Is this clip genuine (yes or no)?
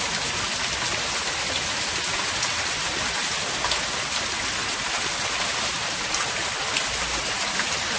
yes